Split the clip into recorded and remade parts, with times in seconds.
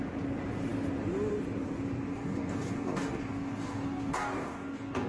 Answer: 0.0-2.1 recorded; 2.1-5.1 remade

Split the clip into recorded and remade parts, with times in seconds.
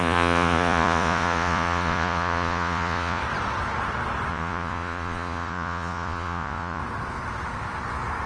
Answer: 0.0-3.2 remade; 3.2-4.3 recorded; 4.3-6.8 remade; 6.8-8.3 recorded